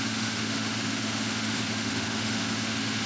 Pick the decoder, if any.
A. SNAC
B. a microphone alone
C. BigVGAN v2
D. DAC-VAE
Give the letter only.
D